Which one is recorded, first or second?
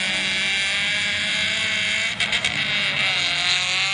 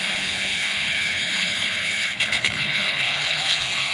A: first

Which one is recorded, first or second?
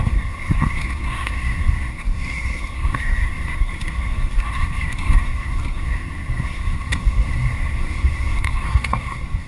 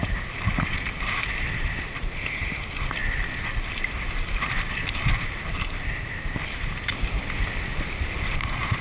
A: second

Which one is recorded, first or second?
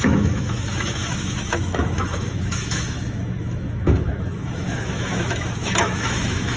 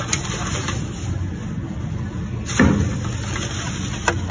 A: second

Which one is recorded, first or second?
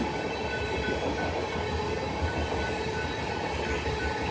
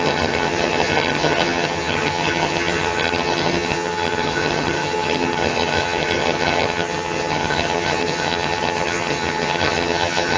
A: first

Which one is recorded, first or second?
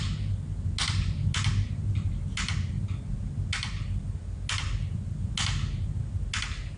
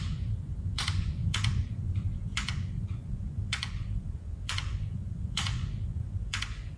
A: first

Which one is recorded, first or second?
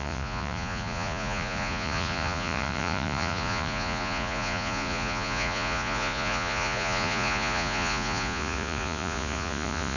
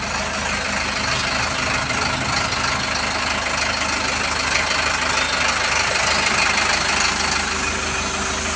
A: second